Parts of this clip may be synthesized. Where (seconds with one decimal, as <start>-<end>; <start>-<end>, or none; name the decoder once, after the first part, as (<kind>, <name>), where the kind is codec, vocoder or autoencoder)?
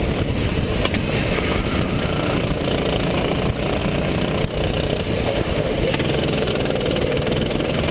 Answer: 0.0-3.8 (vocoder, BigVGAN v2); 6.5-7.9